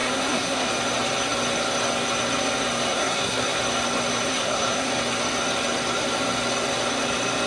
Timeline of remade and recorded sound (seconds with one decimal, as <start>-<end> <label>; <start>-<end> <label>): 0.0-0.7 remade; 0.7-2.9 recorded; 2.9-3.6 remade; 3.6-4.3 recorded; 4.3-4.9 remade; 4.9-7.5 recorded